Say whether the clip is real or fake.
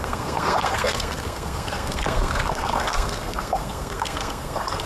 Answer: fake